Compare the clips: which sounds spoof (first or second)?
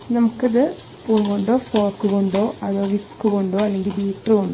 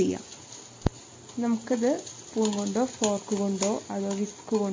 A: first